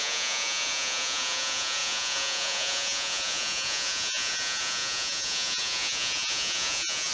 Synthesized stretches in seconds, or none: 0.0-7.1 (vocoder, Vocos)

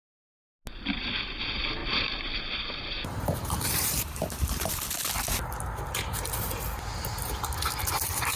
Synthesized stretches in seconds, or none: 1.8-4.7 (vocoder, BigVGAN v2)

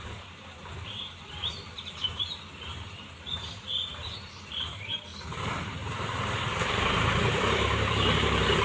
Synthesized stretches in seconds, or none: 0.0-8.6 (vocoder, BigVGAN v2)

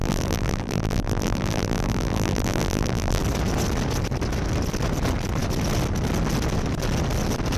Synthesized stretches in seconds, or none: 0.0-3.2 (vocoder, BigVGAN v2)

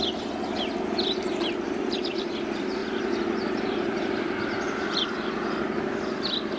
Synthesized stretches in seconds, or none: 0.0-6.6 (vocoder, BigVGAN v2)

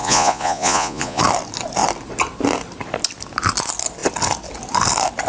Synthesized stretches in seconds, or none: 0.0-1.2 (vocoder, Vocos)

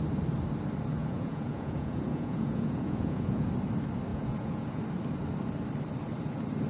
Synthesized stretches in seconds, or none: 1.0-3.5 (vocoder, Vocos); 4.1-4.8